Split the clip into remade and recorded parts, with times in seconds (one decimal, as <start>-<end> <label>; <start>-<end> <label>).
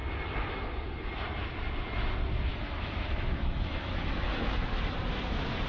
0.0-2.5 recorded; 2.5-4.7 remade; 4.7-5.7 recorded